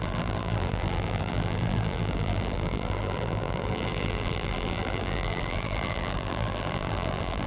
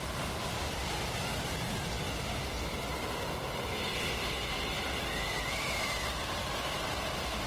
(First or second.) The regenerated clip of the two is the first